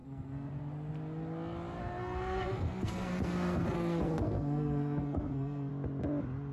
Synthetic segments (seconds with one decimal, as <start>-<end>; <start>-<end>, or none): 0.0-0.5; 1.8-5.7